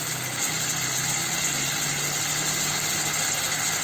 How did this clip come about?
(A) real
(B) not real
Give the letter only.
A